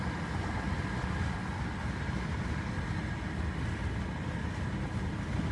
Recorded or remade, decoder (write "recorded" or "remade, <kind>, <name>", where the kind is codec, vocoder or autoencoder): recorded